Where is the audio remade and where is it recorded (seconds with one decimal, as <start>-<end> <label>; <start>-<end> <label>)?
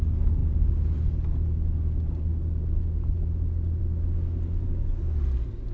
0.0-5.7 recorded